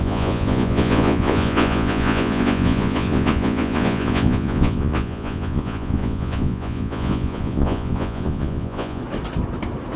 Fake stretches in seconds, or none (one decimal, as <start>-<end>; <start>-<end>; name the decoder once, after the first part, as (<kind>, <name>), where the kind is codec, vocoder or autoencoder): 0.0-9.0 (vocoder, Vocos)